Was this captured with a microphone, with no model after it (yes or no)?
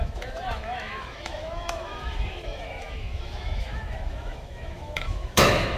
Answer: no